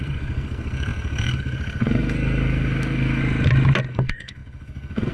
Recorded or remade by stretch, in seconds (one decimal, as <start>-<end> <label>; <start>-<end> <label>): 0.0-3.2 remade; 3.2-3.9 recorded; 3.9-5.1 remade